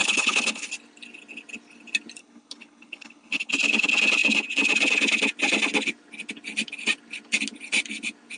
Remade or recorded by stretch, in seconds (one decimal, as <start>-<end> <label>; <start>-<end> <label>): 0.0-0.7 remade; 0.7-2.2 recorded; 2.2-3.5 remade; 3.5-8.4 recorded